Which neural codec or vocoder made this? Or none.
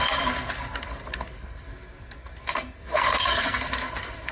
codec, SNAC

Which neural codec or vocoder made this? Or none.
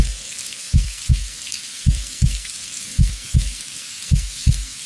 codec, SNAC